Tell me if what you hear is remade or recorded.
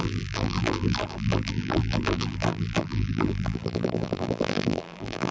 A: remade